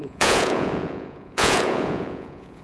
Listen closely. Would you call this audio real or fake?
fake